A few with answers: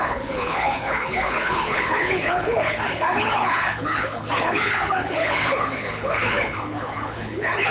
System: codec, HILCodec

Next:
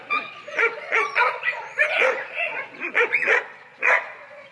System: vocoder, Vocos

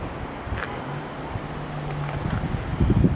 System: none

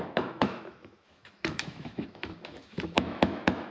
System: autoencoder, DAC-VAE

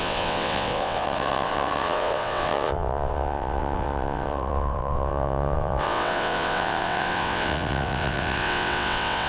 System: vocoder, WaveNeXt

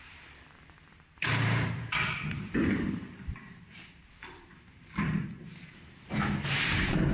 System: vocoder, BigVGAN v2